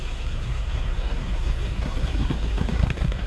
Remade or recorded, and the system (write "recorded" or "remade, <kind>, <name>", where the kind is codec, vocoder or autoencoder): remade, codec, SNAC